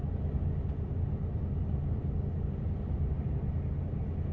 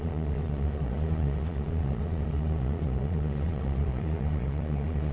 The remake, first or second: second